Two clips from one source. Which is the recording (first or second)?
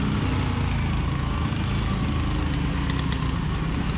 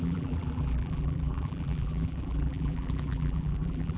first